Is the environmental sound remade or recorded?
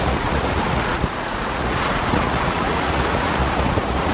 remade